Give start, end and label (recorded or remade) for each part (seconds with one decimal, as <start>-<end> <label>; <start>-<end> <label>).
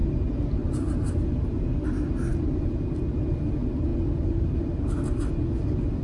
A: 0.0-6.0 recorded